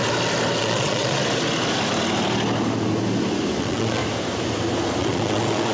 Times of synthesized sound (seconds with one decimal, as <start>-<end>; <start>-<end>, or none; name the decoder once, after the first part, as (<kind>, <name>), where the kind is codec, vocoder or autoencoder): 0.6-1.2 (vocoder, Vocos); 3.6-4.0; 5.0-5.7